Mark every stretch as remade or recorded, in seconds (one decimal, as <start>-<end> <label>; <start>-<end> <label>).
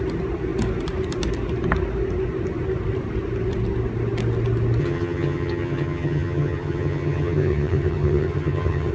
0.0-4.8 recorded; 4.8-8.9 remade